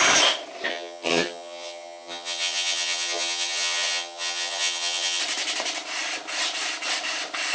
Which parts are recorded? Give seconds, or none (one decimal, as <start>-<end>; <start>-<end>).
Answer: 0.0-0.7; 5.2-7.5